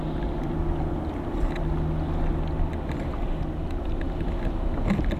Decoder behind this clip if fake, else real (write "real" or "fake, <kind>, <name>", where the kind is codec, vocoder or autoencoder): real